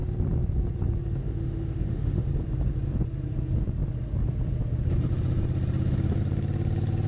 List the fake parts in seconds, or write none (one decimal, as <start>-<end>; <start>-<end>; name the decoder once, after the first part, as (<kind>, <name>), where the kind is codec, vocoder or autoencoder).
1.2-2.3 (autoencoder, DAC-VAE)